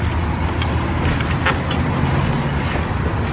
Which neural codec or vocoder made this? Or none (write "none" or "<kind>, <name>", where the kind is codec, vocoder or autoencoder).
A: none